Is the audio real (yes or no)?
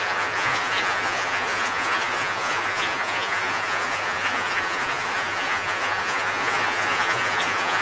no